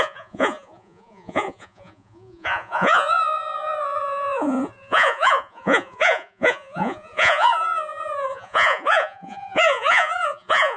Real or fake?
fake